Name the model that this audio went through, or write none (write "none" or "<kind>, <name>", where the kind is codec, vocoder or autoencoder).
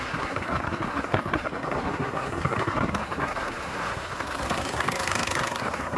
codec, SNAC